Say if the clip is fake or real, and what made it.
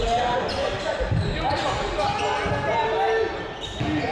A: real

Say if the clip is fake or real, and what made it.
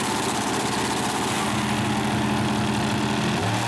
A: real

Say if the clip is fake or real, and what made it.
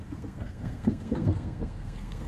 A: fake, codec, SNAC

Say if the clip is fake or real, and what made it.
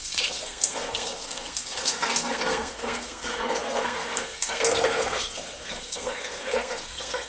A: fake, codec, SNAC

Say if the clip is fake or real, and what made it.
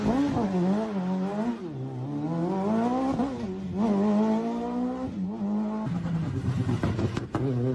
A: real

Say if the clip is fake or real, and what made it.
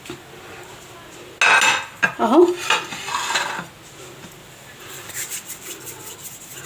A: real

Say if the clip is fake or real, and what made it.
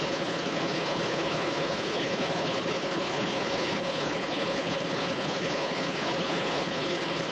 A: fake, codec, HILCodec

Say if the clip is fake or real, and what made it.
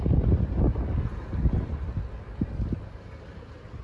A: real